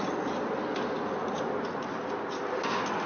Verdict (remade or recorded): recorded